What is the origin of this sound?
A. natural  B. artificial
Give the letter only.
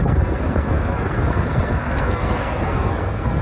B